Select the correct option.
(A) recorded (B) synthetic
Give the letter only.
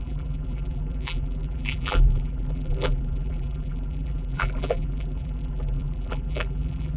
B